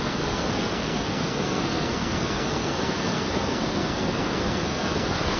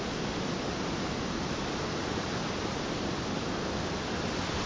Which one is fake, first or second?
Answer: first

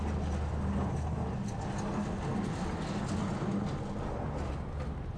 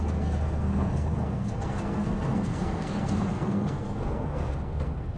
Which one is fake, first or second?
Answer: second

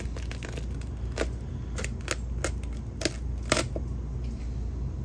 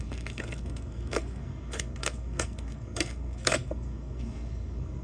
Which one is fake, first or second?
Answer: second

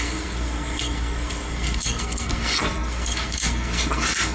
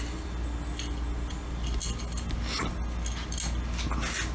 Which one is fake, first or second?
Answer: first